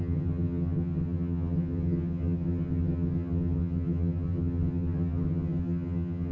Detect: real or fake fake